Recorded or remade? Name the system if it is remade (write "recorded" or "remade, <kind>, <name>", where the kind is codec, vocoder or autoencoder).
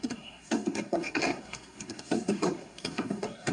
remade, codec, SNAC